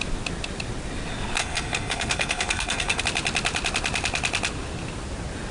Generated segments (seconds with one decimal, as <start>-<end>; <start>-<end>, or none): 1.4-3.0